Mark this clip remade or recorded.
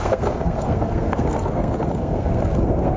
remade